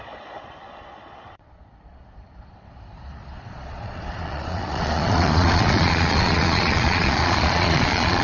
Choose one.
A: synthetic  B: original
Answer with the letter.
A